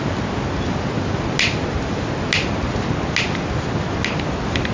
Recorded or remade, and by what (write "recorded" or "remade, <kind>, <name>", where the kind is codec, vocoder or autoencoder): recorded